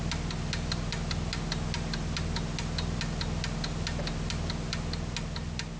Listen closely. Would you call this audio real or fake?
real